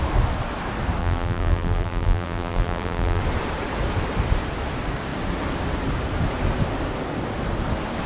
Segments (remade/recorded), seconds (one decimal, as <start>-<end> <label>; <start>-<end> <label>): 0.0-1.0 recorded; 1.0-3.2 remade; 3.2-8.1 recorded